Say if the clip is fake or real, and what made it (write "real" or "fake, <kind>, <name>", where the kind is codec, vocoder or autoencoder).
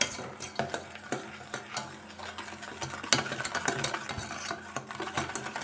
real